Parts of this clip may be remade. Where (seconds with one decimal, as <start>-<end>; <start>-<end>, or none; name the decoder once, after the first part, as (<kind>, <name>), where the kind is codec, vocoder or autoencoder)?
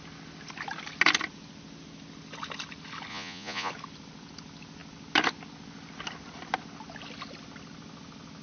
3.1-3.7 (vocoder, Vocos)